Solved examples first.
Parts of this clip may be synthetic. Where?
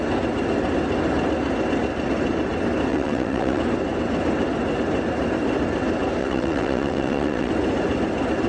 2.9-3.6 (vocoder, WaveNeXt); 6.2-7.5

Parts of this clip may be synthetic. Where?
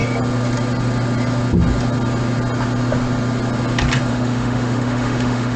4.1-5.6 (autoencoder, DAC-VAE)